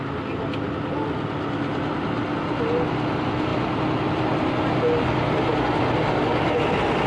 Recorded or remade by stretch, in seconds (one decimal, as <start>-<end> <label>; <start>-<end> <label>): 0.0-7.1 recorded